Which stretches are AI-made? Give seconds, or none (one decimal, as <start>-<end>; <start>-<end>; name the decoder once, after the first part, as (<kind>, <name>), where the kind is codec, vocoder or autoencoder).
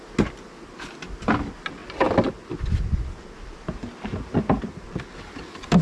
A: none